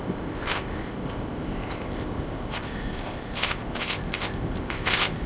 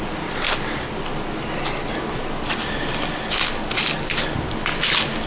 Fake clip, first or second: first